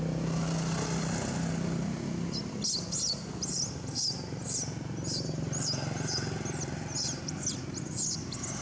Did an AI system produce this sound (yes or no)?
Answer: no